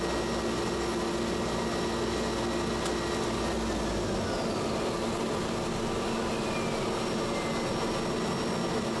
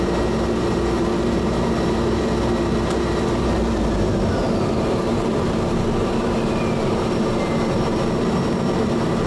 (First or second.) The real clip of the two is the first